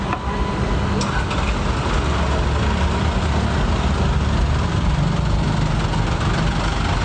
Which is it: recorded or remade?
recorded